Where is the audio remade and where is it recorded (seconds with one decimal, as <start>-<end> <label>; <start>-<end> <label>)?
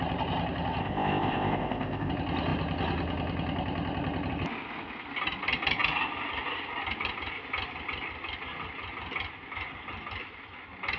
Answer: 0.0-0.8 recorded; 0.8-2.1 remade; 2.1-11.0 recorded